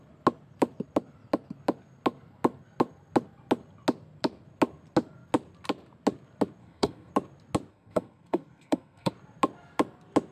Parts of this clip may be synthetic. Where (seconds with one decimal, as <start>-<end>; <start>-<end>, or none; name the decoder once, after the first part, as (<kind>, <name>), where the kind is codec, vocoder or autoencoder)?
6.6-7.1 (codec, SNAC); 7.7-9.1